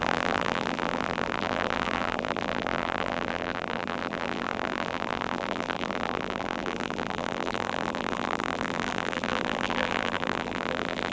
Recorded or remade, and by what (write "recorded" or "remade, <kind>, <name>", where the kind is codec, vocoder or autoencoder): remade, vocoder, BigVGAN v2